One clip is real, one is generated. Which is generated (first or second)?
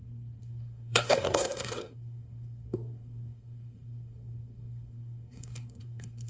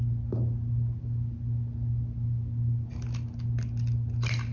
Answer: first